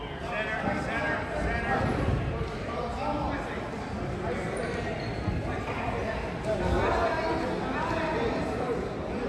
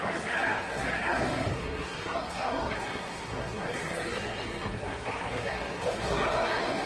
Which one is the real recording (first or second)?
first